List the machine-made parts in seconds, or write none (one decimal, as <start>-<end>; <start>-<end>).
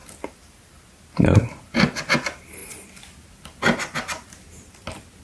none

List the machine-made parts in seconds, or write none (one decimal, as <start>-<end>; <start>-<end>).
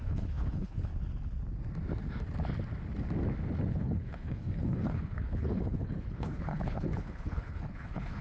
0.0-0.9; 3.7-8.2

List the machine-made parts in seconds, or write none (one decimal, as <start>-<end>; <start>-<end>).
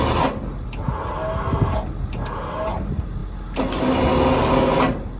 none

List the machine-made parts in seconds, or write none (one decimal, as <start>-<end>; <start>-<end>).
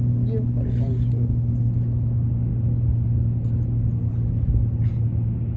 none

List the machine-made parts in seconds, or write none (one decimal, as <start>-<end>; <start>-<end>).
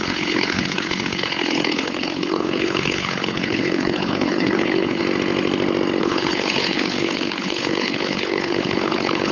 0.0-5.0; 6.0-9.3